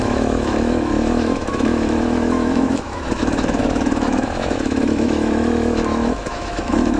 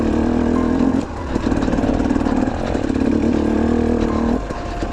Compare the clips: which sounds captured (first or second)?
second